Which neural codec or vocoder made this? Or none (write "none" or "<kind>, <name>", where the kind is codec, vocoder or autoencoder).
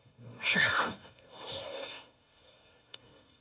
codec, SNAC